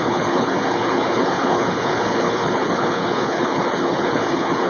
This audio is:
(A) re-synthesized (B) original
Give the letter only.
A